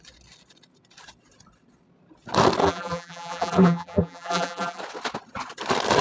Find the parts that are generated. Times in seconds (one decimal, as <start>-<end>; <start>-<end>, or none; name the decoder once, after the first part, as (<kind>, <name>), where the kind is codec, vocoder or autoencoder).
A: 2.6-4.8 (vocoder, BigVGAN v2)